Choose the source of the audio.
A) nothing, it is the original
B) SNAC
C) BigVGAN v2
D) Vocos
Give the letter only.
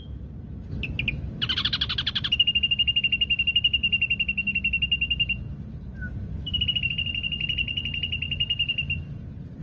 A